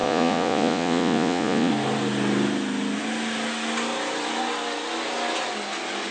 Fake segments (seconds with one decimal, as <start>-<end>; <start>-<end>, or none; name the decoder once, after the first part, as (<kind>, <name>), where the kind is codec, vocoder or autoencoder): 0.0-1.7 (vocoder, Vocos)